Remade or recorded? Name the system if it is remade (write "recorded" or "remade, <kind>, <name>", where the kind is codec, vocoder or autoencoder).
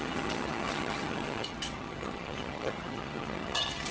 remade, vocoder, HiFi-GAN